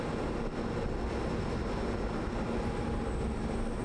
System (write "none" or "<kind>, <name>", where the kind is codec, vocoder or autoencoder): none